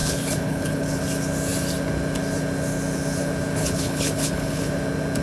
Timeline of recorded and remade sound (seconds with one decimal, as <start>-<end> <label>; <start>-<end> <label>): 0.0-1.0 remade; 1.0-3.6 recorded; 3.6-4.7 remade; 4.7-5.2 recorded

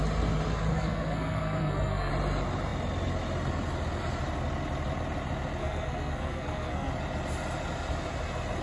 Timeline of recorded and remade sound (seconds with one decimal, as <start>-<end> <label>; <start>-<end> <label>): 0.0-0.7 recorded; 0.7-2.1 remade; 2.1-5.6 recorded; 5.6-6.9 remade; 6.9-8.6 recorded

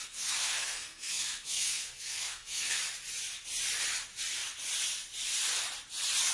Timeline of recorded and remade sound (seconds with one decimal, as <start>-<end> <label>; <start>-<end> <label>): 0.0-2.8 remade; 2.8-6.3 recorded

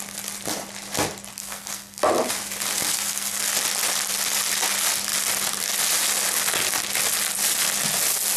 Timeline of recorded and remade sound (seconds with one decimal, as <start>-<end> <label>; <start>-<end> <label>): 0.0-1.3 recorded; 1.3-2.0 remade; 2.0-2.9 recorded; 2.9-3.4 remade; 3.4-8.4 recorded